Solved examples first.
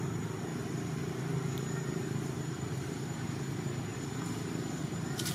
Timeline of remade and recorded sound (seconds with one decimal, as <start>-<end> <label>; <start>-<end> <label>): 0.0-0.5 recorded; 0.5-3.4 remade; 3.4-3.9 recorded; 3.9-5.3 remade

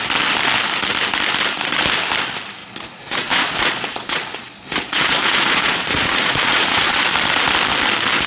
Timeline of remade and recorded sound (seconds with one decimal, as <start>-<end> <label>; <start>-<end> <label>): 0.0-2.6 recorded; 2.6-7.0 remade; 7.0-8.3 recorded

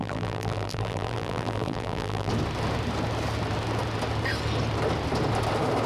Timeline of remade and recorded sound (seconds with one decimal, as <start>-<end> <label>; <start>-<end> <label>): 0.0-2.3 remade; 2.3-5.9 recorded

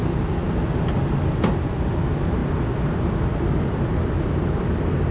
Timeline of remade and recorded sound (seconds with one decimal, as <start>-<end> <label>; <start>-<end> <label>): 0.0-5.1 recorded